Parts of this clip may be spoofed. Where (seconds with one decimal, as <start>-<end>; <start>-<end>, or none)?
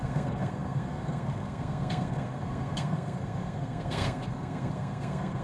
0.0-5.4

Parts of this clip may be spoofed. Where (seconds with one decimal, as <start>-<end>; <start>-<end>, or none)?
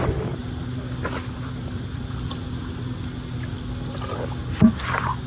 0.4-2.3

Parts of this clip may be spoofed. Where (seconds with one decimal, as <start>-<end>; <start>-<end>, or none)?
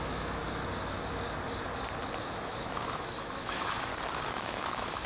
0.0-0.4; 2.2-3.9; 4.4-5.1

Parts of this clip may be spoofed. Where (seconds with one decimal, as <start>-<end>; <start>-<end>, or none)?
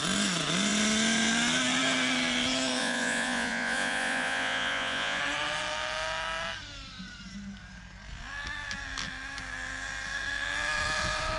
2.8-5.2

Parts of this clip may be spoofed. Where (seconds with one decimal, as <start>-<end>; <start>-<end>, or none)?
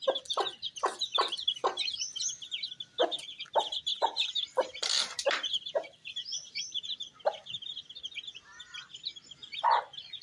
none